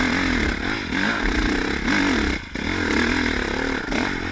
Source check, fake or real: real